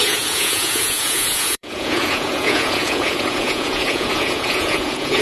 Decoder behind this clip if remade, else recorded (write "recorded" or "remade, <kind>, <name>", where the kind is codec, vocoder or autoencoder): remade, vocoder, Vocos